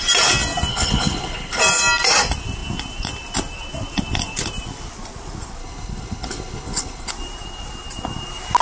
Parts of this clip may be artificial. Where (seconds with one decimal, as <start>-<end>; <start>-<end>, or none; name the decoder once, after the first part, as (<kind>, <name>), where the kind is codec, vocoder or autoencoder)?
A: 0.7-1.6 (codec, HILCodec); 5.6-7.1